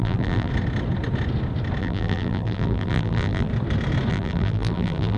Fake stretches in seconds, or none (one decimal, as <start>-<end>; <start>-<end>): 0.0-0.5; 1.8-3.5; 4.1-5.2